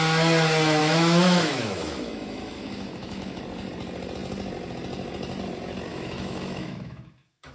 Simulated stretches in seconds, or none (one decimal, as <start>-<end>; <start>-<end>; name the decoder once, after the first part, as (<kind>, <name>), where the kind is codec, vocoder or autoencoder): 0.8-3.4 (autoencoder, DAC-VAE); 5.9-7.5